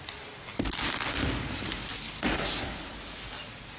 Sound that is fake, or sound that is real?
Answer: real